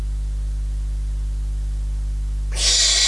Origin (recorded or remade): recorded